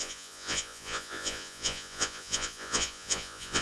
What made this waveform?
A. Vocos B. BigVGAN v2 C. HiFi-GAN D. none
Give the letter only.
A